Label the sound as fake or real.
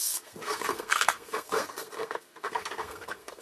fake